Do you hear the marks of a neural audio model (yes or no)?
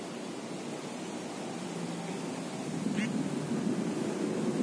no